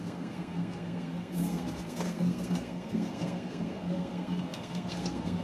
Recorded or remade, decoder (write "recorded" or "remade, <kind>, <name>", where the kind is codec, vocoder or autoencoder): remade, codec, SNAC